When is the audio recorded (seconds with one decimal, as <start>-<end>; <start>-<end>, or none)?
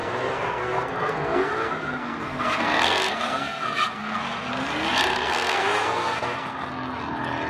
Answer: 4.5-5.1; 6.7-7.5